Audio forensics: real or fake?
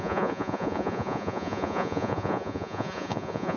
fake